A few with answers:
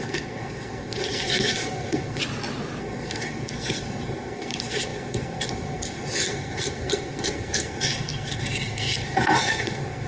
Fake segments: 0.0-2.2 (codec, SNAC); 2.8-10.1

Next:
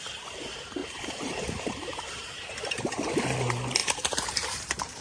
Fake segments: 0.8-3.1 (vocoder, BigVGAN v2); 3.8-5.0

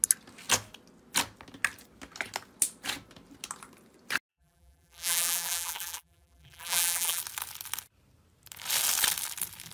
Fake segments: 4.3-7.2 (vocoder, BigVGAN v2)

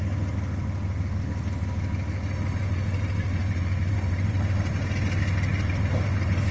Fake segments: 2.6-4.9 (vocoder, BigVGAN v2); 5.5-6.5

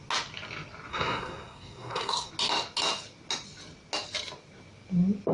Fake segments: 0.9-2.3 (codec, SNAC)

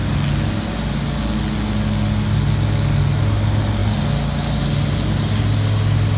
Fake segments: none